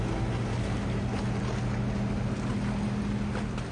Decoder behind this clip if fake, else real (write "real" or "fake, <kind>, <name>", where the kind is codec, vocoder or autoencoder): real